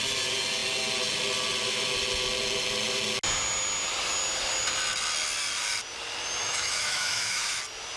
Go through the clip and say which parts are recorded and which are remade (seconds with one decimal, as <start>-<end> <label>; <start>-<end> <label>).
0.0-6.4 recorded; 6.4-7.6 remade; 7.6-8.0 recorded